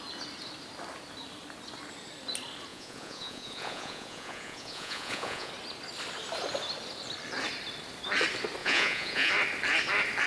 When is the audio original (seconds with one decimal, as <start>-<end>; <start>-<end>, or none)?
0.0-2.7; 5.5-8.6; 9.3-10.3